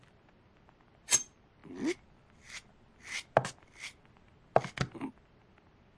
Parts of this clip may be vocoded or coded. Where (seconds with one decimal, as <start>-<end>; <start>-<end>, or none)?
none